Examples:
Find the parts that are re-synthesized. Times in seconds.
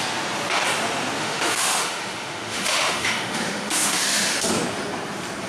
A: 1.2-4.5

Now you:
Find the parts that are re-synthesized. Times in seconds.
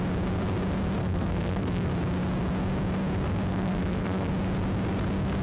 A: 1.0-1.9; 3.5-4.3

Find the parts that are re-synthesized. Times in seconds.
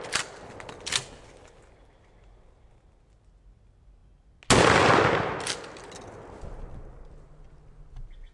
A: none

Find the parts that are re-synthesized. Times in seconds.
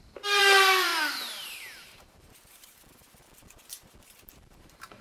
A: 0.0-5.0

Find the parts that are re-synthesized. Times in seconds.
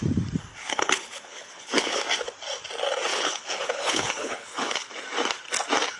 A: 0.5-2.0; 3.1-4.9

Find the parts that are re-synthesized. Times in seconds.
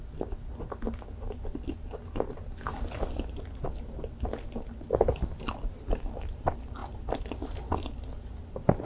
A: none